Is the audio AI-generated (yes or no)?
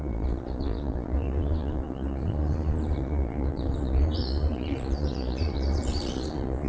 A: yes